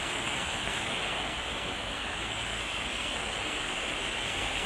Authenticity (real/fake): fake